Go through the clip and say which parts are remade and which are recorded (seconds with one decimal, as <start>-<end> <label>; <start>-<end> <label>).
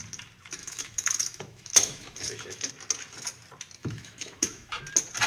0.0-0.6 recorded; 0.6-2.7 remade; 2.7-3.8 recorded; 3.8-4.8 remade; 4.8-5.3 recorded